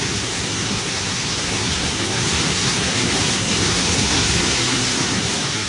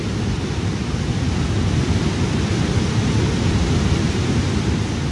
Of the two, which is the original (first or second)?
second